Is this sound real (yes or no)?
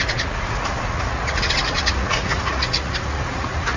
no